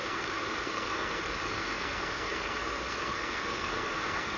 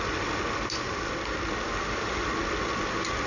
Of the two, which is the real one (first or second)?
second